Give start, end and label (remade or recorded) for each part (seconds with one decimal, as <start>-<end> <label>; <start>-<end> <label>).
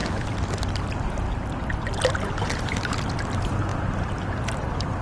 0.0-5.0 recorded